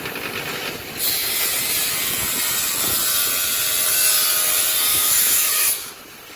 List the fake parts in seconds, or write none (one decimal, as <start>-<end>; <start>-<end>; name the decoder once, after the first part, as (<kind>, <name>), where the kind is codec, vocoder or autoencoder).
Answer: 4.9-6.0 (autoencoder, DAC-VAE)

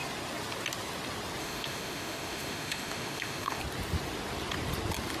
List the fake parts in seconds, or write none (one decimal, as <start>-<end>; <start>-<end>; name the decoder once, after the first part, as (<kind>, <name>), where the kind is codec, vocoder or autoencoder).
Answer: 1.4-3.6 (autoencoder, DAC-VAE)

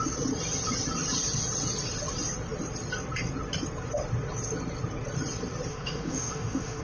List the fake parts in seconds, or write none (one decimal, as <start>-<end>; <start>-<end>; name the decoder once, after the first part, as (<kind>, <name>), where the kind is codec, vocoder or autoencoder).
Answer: 5.7-6.8 (autoencoder, DAC-VAE)